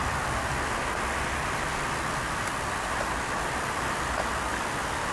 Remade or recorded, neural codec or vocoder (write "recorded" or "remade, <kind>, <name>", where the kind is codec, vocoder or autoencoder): recorded